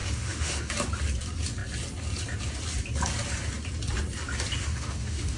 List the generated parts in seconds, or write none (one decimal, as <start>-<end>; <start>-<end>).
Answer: 0.0-0.7; 4.6-5.4